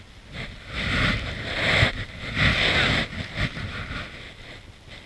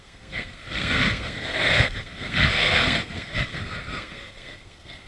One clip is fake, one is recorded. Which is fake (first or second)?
second